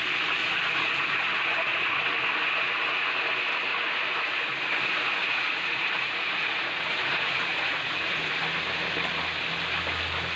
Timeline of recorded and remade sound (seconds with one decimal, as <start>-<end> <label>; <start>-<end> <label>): 0.0-0.4 recorded; 0.4-2.0 remade; 2.0-3.7 recorded; 3.7-4.5 remade; 4.5-5.2 recorded; 5.2-8.3 remade; 8.3-10.4 recorded

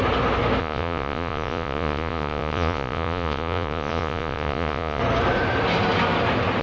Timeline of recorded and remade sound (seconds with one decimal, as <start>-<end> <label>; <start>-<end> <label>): 0.0-0.6 recorded; 0.6-5.0 remade; 5.0-6.6 recorded

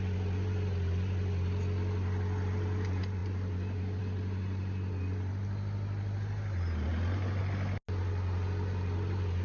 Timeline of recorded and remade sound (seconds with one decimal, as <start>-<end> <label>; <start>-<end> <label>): 0.0-9.4 recorded

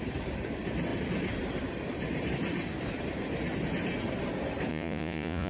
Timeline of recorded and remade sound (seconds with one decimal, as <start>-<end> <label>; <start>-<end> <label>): 0.0-4.7 recorded; 4.7-5.5 remade

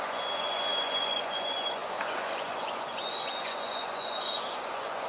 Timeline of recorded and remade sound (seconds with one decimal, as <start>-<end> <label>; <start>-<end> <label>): 0.0-5.1 remade

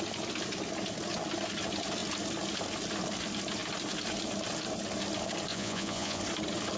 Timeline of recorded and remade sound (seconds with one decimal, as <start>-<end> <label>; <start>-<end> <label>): 0.0-5.5 recorded; 5.5-6.2 remade; 6.2-6.8 recorded

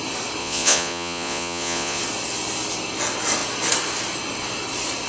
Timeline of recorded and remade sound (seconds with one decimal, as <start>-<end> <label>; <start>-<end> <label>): 0.0-0.4 recorded; 0.4-2.0 remade; 2.0-5.1 recorded

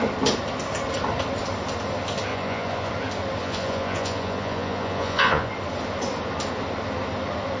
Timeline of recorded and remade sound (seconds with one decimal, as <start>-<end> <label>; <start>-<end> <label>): 0.0-2.3 recorded; 2.3-2.9 remade; 2.9-3.4 recorded; 3.4-5.5 remade; 5.5-7.6 recorded